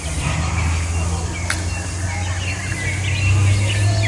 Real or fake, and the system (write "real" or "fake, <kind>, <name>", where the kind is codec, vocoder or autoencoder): real